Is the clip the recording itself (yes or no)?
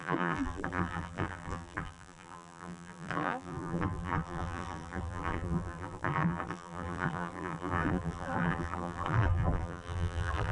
no